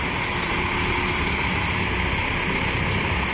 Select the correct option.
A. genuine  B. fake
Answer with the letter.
A